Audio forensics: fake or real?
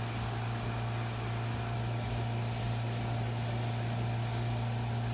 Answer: real